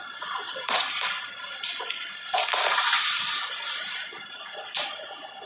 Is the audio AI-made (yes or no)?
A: yes